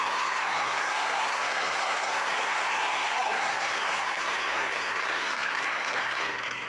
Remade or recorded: remade